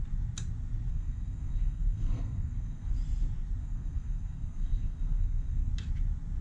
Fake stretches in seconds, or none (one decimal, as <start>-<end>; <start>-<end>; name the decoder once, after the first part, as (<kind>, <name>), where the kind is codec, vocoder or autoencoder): 0.9-2.9 (codec, SNAC); 3.6-5.7